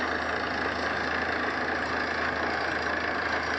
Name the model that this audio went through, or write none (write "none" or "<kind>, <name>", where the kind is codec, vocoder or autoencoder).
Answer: none